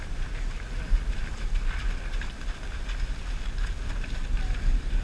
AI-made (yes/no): no